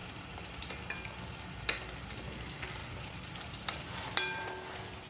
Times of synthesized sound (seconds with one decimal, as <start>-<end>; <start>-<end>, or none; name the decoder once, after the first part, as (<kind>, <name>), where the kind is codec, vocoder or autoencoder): 0.0-0.7 (vocoder, BigVGAN v2); 2.8-3.8